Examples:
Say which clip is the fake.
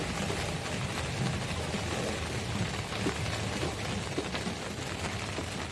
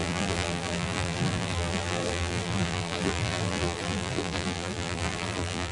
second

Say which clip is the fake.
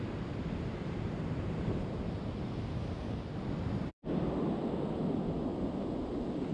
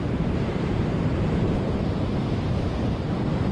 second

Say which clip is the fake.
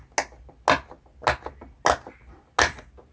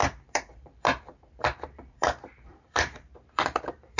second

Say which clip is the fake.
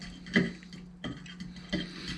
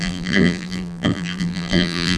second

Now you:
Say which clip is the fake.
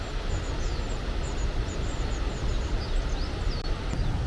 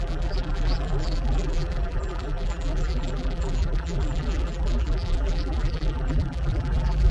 second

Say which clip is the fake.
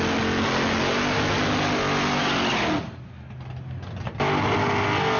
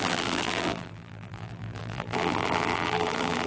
second